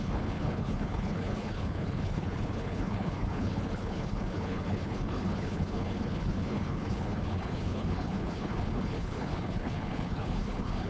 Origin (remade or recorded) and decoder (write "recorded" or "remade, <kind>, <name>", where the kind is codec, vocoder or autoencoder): remade, codec, HILCodec